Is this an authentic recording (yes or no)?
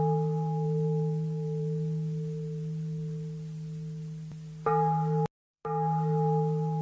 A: yes